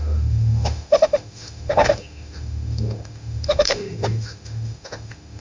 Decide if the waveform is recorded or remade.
remade